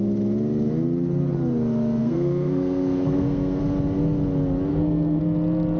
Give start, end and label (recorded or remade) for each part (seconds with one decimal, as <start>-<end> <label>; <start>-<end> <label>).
0.0-2.0 recorded; 2.0-3.6 remade; 3.6-4.7 recorded; 4.7-5.2 remade; 5.2-5.8 recorded